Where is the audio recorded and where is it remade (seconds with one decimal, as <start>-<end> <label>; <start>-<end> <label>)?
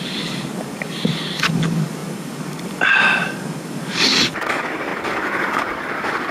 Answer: 0.0-6.3 remade